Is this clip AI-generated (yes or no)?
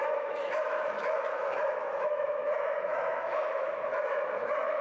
yes